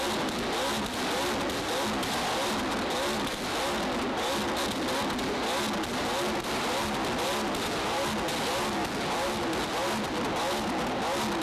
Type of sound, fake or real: real